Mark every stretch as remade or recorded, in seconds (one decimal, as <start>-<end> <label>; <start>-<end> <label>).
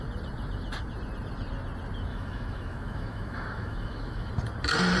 0.0-2.1 recorded; 2.1-4.3 remade; 4.3-5.0 recorded